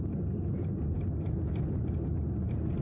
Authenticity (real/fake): real